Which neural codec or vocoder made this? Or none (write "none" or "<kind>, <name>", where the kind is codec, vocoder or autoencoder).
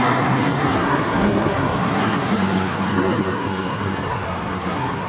codec, SNAC